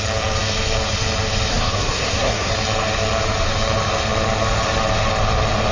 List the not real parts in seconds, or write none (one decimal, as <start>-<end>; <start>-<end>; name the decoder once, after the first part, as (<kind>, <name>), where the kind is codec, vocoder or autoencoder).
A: 1.5-2.5 (codec, SNAC)